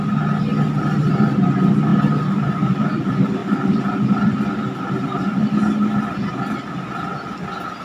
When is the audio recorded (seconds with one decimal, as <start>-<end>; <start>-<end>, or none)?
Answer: 0.0-3.4; 4.6-7.8